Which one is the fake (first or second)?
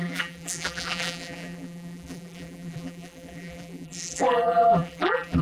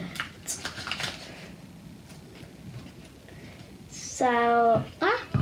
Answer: first